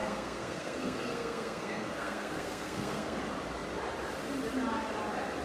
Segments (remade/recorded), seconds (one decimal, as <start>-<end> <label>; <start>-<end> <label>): 0.0-3.2 remade; 3.2-5.4 recorded